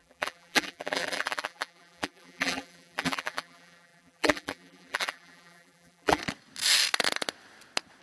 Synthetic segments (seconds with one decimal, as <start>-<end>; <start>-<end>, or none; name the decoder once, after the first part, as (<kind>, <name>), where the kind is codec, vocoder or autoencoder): 0.0-6.2 (vocoder, BigVGAN v2)